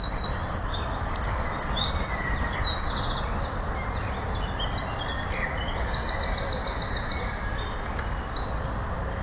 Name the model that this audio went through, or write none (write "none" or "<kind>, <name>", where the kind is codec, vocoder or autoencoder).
none